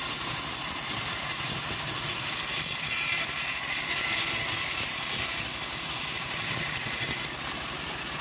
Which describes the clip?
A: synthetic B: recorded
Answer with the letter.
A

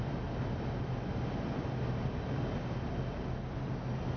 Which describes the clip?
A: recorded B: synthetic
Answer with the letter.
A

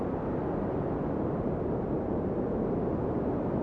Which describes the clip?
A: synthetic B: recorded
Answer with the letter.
B